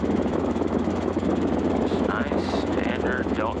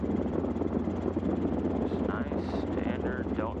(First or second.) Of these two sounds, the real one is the second